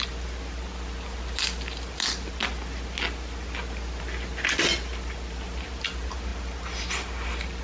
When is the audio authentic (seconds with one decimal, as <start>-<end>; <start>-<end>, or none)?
0.0-7.6